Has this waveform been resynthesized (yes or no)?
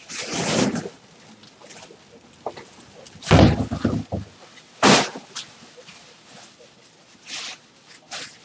no